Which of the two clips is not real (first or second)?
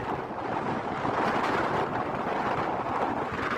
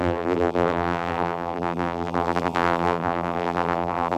second